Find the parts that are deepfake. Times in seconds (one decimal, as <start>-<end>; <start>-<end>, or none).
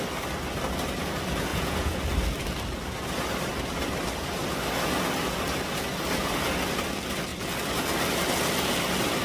1.5-2.0